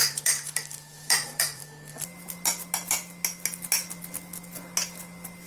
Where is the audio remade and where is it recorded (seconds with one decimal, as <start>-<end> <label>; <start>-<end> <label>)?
0.0-1.6 remade; 1.6-5.5 recorded